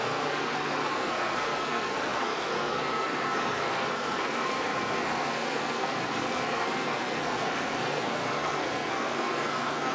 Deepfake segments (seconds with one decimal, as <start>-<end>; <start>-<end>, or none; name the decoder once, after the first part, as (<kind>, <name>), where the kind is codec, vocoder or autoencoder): 0.0-9.9 (codec, SNAC)